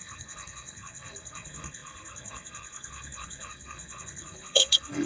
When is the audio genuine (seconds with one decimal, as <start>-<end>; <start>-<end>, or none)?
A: none